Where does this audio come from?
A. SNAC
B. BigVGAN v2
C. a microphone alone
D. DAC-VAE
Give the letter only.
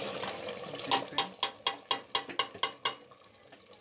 C